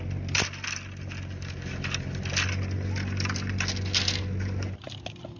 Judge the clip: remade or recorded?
recorded